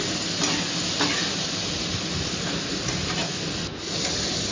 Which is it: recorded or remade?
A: recorded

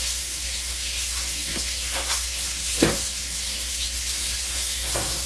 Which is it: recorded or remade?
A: remade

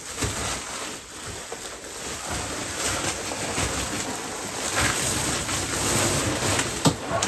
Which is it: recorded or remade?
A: recorded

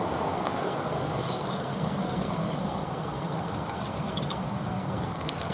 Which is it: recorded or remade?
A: remade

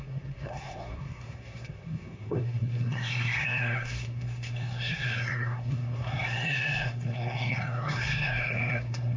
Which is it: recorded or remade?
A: remade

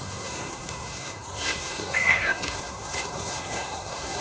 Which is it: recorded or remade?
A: remade